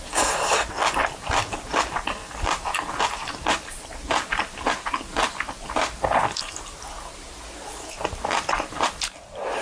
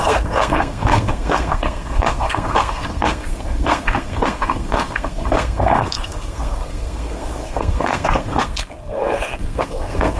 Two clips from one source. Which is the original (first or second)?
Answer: first